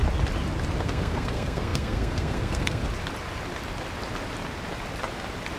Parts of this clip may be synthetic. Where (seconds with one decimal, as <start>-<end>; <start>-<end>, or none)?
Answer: 0.8-2.8